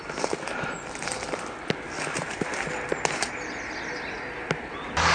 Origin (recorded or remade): recorded